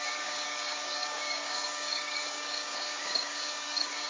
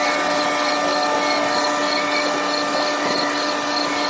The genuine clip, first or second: second